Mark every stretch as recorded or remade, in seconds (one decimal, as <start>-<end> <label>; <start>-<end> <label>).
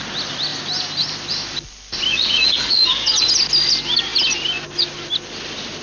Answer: 0.0-2.1 recorded; 2.1-2.8 remade; 2.8-5.8 recorded